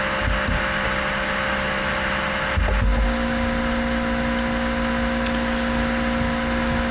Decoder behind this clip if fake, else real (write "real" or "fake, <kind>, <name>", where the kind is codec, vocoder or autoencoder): real